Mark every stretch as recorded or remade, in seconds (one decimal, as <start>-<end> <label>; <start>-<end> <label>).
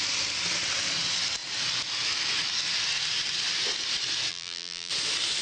0.0-4.3 recorded; 4.3-4.9 remade; 4.9-5.4 recorded